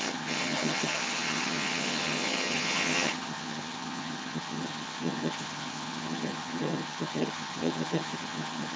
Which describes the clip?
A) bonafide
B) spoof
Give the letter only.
B